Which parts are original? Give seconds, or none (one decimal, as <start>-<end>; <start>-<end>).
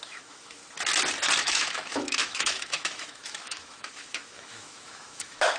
0.6-1.4